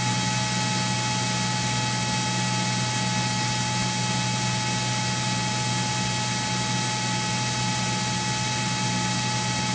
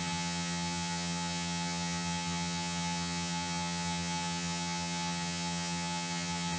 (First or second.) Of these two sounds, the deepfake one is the second